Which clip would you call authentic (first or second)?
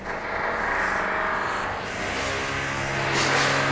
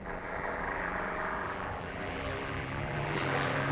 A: first